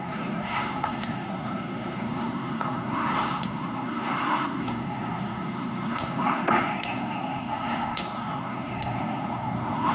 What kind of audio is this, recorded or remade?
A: remade